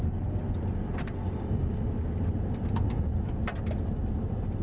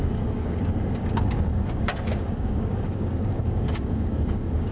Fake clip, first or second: second